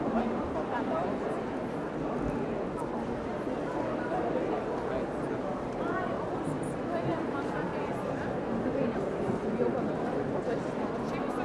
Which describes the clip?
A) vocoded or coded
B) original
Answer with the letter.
B